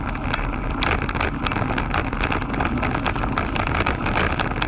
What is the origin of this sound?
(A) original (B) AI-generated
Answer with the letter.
A